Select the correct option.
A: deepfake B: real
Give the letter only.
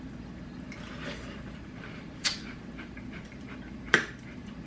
A